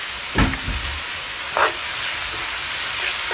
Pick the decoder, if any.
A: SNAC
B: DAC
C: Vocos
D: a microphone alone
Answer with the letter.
D